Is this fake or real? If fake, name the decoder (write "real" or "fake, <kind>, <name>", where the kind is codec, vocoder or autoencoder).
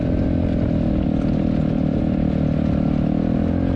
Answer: real